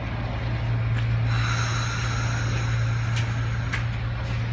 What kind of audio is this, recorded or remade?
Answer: recorded